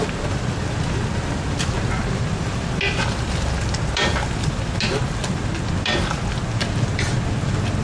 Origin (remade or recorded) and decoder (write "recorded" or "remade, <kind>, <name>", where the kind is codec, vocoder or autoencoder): recorded